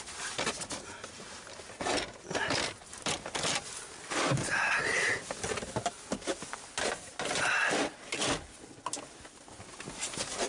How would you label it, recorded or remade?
recorded